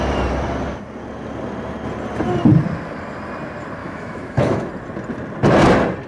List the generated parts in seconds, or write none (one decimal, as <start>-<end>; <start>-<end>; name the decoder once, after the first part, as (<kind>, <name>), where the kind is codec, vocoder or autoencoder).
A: 3.8-4.7 (autoencoder, DAC-VAE)